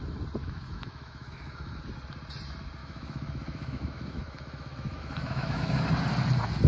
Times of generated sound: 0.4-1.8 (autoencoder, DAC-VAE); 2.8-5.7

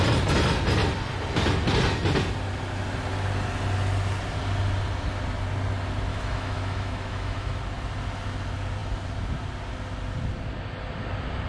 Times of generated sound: 6.1-7.6 (autoencoder, DAC-VAE)

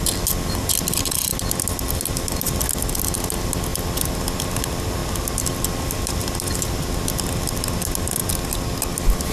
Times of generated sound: none

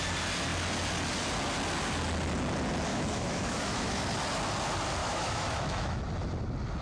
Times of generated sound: 2.9-4.0 (autoencoder, DAC-VAE); 5.0-6.0